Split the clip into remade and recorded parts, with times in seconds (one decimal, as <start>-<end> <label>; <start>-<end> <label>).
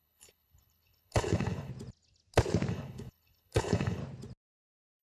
0.0-1.7 remade; 1.7-2.7 recorded; 2.7-4.0 remade; 4.0-5.0 recorded